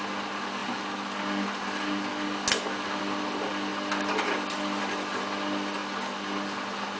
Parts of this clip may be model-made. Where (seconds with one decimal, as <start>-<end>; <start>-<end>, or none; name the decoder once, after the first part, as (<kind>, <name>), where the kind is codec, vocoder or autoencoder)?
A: none